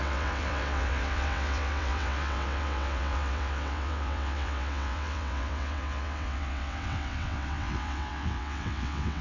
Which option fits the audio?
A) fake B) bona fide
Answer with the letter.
A